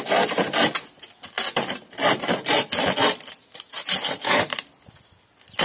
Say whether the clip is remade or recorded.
recorded